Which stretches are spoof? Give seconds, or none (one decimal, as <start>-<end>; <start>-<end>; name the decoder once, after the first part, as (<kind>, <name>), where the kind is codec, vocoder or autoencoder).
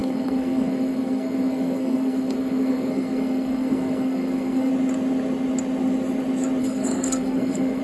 0.0-4.7 (codec, SNAC); 6.6-7.8